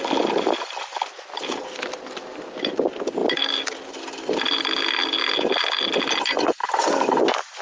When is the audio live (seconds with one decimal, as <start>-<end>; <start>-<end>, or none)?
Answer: 0.0-7.6